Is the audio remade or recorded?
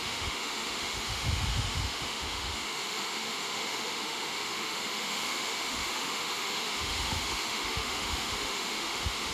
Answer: remade